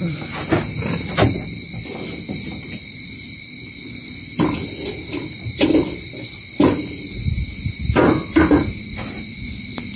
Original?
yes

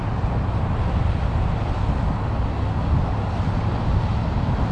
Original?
yes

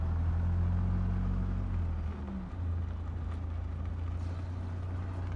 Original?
yes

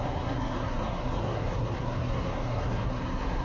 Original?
no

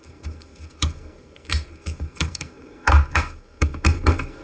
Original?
no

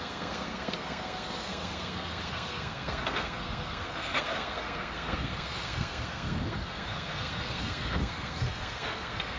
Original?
no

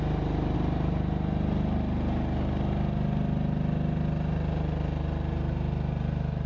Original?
yes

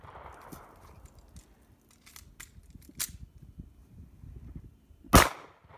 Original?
yes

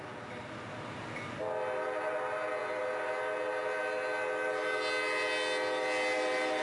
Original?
yes